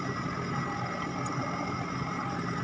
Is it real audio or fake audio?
real